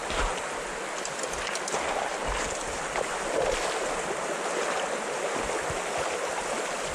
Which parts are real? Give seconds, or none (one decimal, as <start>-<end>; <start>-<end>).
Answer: 0.0-6.9